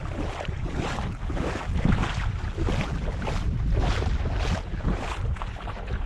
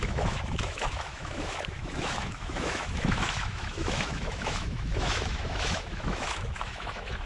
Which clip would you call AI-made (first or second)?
second